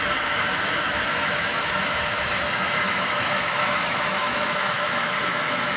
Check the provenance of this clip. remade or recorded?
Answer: remade